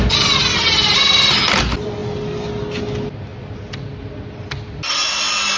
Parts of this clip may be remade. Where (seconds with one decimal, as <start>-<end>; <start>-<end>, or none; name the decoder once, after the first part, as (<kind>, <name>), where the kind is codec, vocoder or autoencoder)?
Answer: none